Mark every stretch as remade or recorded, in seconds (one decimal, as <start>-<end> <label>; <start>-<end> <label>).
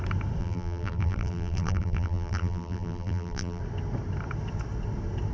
0.0-0.4 recorded; 0.4-3.6 remade; 3.6-5.3 recorded